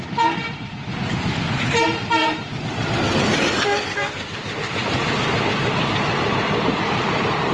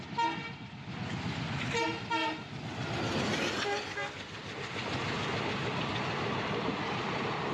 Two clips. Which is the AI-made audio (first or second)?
first